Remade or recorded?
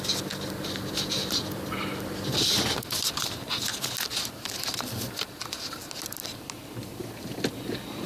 recorded